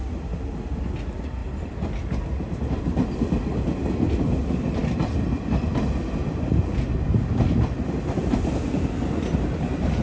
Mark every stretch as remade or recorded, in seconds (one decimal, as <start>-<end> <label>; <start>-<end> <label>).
0.0-10.0 recorded